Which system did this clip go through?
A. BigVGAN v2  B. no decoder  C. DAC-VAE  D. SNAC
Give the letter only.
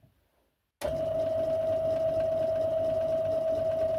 B